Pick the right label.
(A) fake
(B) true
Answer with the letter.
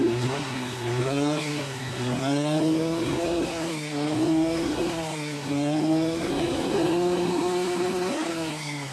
A